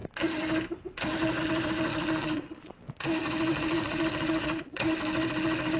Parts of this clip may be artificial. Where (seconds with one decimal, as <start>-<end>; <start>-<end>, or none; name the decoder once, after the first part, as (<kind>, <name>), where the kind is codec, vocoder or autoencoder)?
1.9-2.7 (vocoder, Vocos); 3.5-4.9